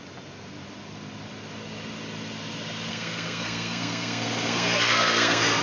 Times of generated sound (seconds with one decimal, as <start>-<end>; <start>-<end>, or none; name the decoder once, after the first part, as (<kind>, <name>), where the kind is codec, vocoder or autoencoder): 2.9-5.6 (codec, SNAC)